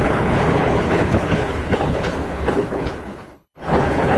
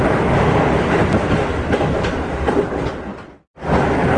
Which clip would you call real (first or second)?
second